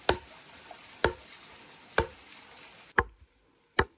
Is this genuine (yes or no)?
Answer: yes